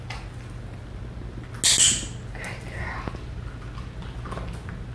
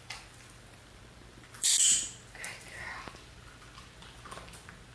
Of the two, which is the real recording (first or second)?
first